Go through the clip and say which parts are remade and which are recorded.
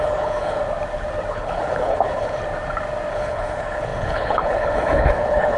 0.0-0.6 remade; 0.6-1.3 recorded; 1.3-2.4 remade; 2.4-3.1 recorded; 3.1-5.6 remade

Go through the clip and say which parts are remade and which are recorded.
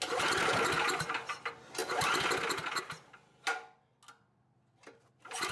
0.0-5.5 recorded